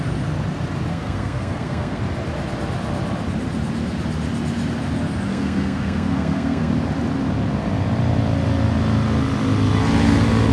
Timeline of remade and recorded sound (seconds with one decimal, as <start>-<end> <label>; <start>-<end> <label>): 0.0-0.9 recorded; 0.9-2.0 remade; 2.0-5.3 recorded; 5.3-6.7 remade; 6.7-10.5 recorded